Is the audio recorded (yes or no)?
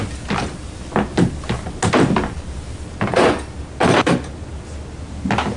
yes